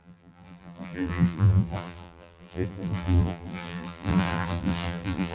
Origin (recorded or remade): remade